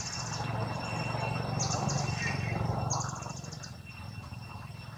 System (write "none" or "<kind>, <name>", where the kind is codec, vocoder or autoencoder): none